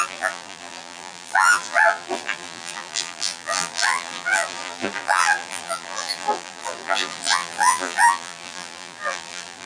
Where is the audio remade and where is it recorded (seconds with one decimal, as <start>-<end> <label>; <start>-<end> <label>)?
0.0-9.7 remade